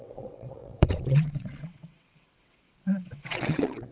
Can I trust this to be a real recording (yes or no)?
no